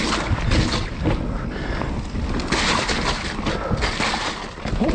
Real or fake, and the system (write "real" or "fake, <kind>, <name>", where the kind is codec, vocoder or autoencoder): real